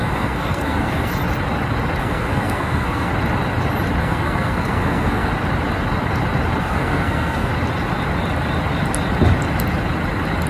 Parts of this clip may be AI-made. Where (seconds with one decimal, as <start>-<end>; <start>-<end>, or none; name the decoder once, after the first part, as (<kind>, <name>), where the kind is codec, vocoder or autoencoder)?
0.0-1.1 (codec, SNAC); 2.0-3.1; 4.0-5.3; 6.6-7.5